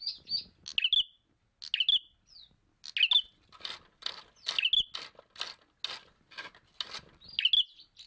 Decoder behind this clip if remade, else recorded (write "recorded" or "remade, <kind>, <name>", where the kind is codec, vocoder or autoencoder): recorded